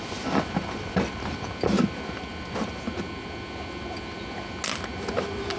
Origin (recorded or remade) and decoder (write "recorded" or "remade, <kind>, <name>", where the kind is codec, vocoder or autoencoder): recorded